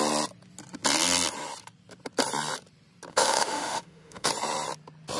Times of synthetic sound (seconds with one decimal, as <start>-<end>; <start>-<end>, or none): 3.1-4.3